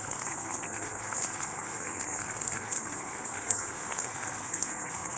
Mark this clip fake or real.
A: fake